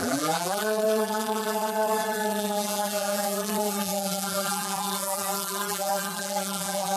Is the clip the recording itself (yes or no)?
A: no